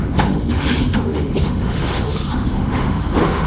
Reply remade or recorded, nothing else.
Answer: remade